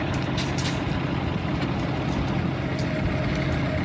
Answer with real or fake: real